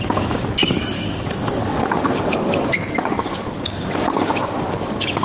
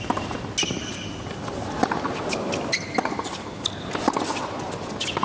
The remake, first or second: first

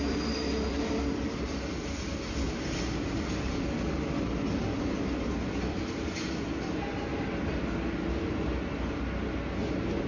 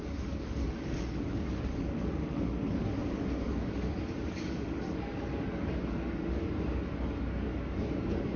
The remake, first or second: second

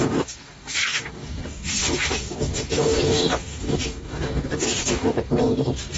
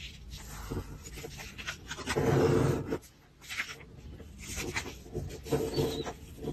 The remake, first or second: first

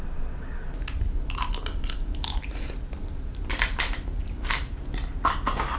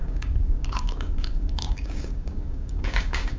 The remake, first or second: second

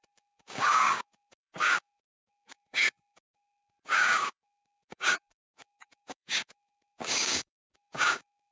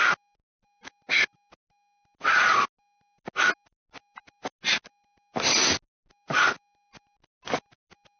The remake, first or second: first